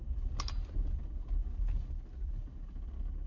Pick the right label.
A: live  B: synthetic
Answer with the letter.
A